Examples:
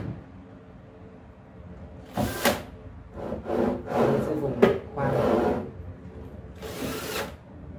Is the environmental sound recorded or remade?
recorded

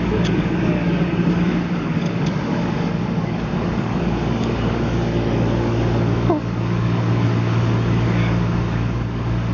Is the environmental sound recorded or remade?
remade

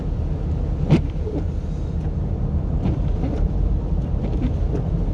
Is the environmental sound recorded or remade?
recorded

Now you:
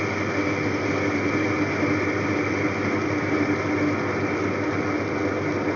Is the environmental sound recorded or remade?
recorded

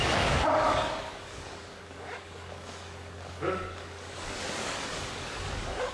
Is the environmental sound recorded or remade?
remade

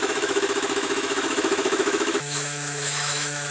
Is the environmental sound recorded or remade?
remade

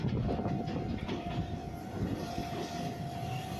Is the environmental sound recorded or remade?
recorded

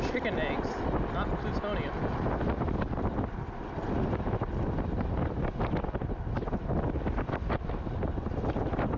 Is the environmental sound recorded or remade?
recorded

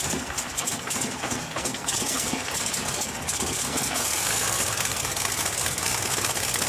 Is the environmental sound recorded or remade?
remade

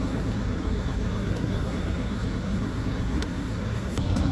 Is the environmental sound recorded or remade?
remade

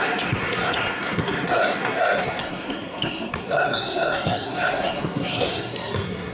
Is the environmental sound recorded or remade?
remade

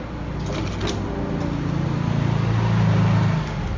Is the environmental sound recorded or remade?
recorded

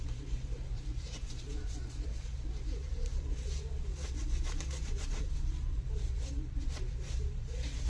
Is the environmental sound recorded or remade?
remade